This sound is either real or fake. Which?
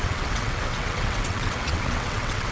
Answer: fake